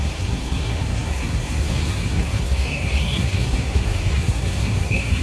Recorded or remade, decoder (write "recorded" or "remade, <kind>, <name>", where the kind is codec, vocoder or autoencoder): remade, codec, SNAC